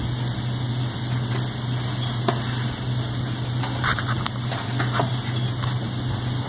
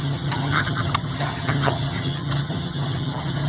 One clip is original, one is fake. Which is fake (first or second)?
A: second